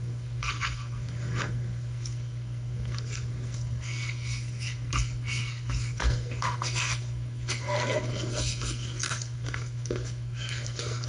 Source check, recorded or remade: remade